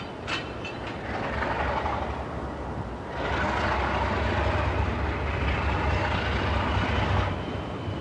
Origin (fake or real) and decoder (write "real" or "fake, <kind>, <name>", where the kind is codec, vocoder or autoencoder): real